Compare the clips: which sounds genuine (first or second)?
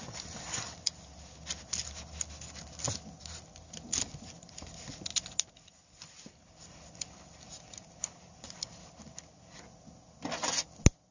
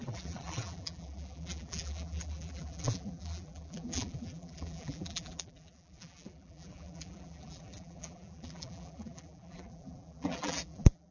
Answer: first